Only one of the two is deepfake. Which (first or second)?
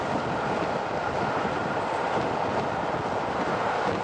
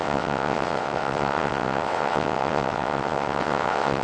second